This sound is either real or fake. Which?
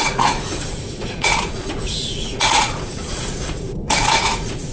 fake